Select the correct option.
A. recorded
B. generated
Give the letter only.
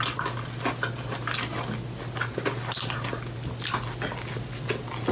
A